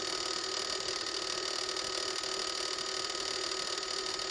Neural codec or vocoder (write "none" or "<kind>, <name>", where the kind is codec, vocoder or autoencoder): none